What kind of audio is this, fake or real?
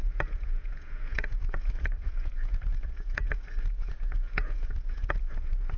fake